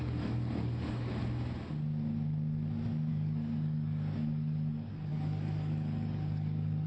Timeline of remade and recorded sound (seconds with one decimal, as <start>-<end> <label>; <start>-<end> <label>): 0.0-1.2 remade; 1.2-3.1 recorded; 3.1-6.9 remade

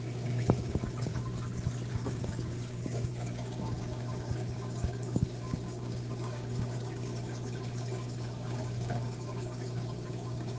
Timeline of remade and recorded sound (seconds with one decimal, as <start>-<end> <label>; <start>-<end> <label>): 0.0-1.1 remade; 1.1-1.9 recorded; 1.9-10.6 remade

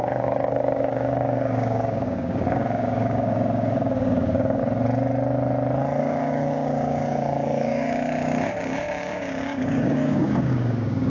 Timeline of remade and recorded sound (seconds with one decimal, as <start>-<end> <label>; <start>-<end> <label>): 0.0-4.6 remade; 4.6-6.0 recorded; 6.0-11.1 remade

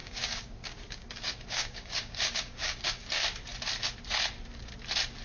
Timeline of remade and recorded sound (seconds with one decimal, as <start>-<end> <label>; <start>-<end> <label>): 0.0-3.1 remade; 3.1-5.2 recorded